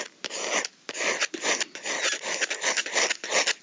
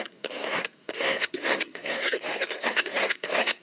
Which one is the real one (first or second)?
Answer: first